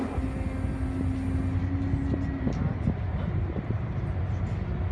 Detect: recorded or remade recorded